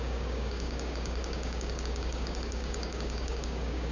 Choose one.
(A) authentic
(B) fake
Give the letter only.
B